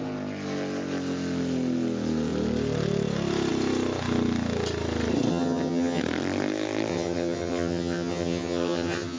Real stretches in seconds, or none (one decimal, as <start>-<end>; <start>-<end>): 0.0-5.3; 6.0-6.9